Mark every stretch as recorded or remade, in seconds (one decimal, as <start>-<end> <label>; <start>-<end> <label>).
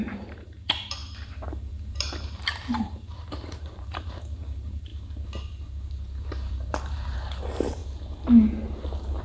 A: 0.0-4.9 remade; 4.9-6.2 recorded; 6.2-7.8 remade; 7.8-9.2 recorded